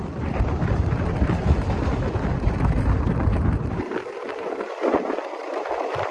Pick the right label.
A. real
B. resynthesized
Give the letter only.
B